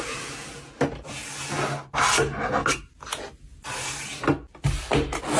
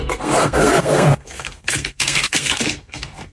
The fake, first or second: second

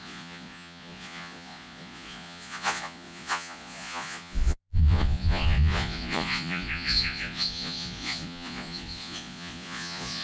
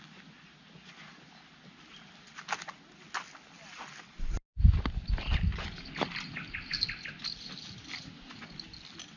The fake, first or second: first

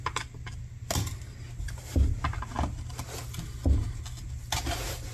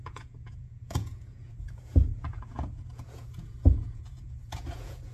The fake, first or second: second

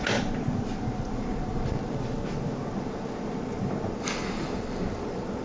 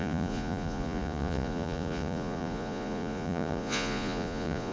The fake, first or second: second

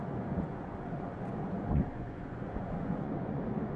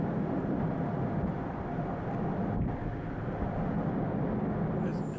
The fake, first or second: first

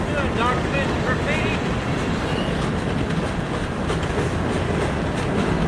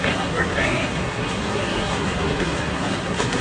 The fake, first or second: second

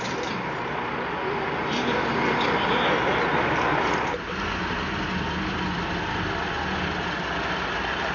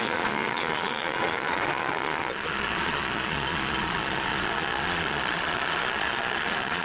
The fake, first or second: second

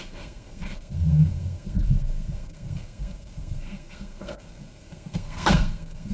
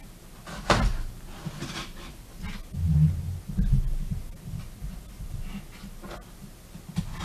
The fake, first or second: first